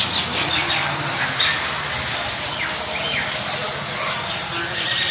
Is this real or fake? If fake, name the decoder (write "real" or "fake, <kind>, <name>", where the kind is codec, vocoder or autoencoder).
real